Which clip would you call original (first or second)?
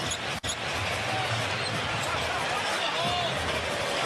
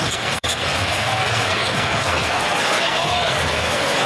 first